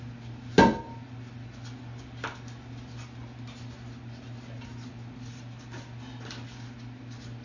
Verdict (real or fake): real